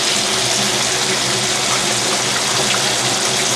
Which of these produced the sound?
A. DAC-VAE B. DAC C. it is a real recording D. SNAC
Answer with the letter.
C